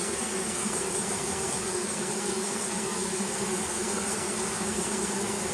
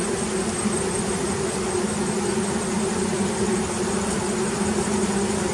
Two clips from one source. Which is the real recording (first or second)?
second